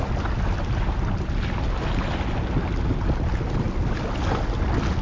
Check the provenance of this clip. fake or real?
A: real